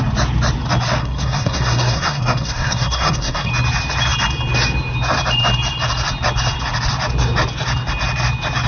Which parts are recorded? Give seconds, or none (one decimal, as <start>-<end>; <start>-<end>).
0.0-1.0; 3.5-8.7

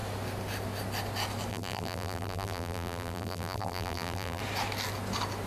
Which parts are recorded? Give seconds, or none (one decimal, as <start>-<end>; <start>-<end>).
0.0-1.5; 4.4-5.5

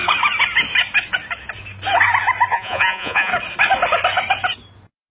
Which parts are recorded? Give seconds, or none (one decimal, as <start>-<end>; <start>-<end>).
0.0-2.5; 3.3-5.1

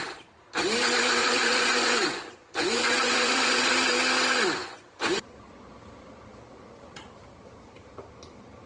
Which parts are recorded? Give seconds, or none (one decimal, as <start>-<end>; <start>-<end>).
0.0-1.2; 3.7-4.6; 5.4-8.7